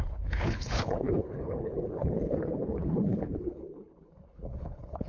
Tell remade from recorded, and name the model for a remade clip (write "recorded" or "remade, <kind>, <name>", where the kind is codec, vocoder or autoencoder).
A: remade, codec, HILCodec